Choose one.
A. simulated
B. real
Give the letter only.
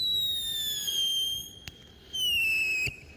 B